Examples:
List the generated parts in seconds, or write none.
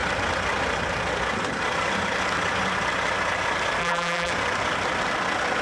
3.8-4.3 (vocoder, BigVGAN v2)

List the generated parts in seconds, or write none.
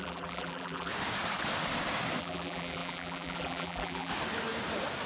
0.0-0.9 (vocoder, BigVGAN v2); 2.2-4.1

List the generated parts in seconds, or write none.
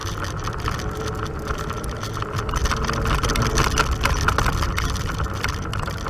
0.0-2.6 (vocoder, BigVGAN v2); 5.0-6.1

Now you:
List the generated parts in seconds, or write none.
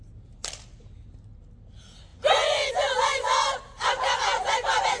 none